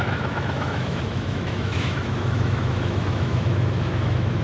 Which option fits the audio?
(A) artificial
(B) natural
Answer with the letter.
A